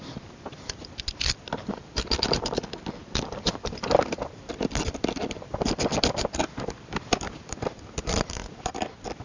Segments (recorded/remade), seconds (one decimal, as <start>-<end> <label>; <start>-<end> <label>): 0.0-9.2 remade